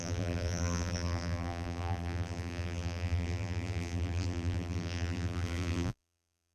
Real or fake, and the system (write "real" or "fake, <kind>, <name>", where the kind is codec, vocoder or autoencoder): fake, vocoder, BigVGAN v2